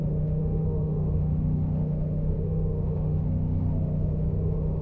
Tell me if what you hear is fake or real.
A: fake